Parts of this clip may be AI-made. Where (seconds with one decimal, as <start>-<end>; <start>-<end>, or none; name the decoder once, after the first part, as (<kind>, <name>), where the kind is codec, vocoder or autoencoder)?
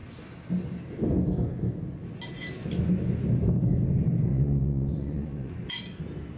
4.3-5.6 (vocoder, Vocos)